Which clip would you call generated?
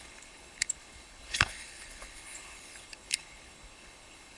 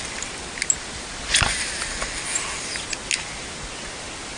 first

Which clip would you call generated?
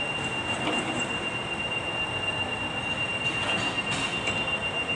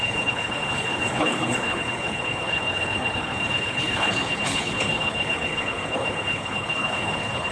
second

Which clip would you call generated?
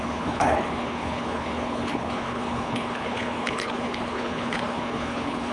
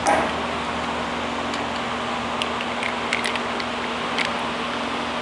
first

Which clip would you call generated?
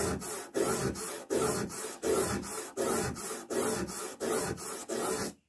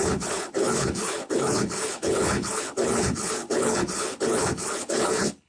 second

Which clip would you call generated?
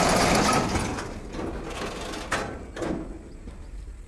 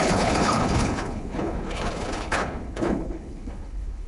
second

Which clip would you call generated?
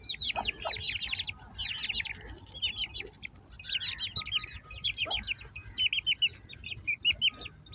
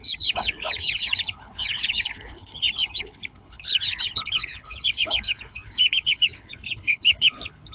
second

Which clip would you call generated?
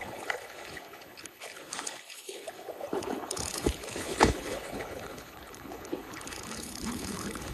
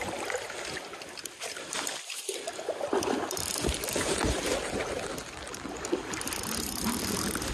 first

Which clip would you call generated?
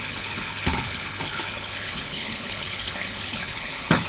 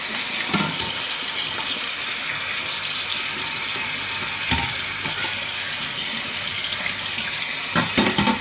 first